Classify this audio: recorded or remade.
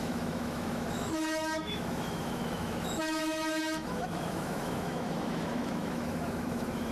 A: remade